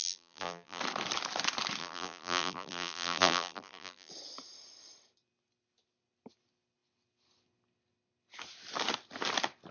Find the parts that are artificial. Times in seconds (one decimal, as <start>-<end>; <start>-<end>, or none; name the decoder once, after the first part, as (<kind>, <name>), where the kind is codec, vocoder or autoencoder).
0.0-0.8 (vocoder, BigVGAN v2); 1.8-4.1